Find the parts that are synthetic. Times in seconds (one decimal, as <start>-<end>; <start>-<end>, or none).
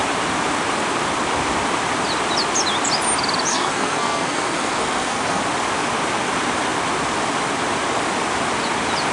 3.5-5.4